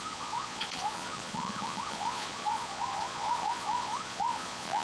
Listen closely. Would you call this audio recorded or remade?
remade